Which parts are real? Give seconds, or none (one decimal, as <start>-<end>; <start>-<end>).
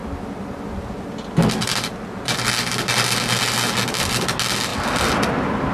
0.0-5.7